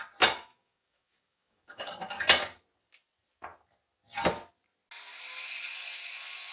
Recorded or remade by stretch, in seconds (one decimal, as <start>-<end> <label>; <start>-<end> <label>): 0.0-0.5 recorded; 0.5-2.2 remade; 2.2-6.5 recorded